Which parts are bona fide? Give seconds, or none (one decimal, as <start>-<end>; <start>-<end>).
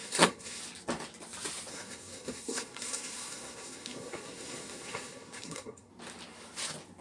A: 0.6-1.7; 5.9-7.0